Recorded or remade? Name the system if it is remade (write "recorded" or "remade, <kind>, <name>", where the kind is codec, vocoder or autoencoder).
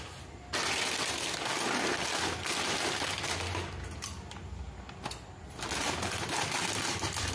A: recorded